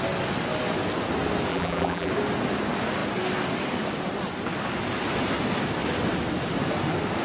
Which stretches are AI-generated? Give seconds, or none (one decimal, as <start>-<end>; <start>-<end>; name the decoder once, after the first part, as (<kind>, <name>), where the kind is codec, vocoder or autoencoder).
1.5-2.1 (vocoder, BigVGAN v2)